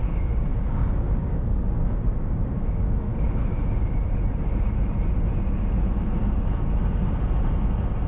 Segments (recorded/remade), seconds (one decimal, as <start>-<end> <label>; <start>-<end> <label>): 0.0-3.1 remade; 3.1-8.1 recorded